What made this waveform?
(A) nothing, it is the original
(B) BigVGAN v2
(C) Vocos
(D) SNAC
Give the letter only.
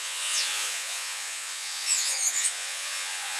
C